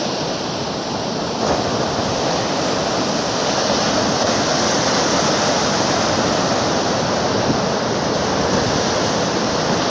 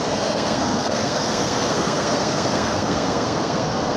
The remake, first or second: second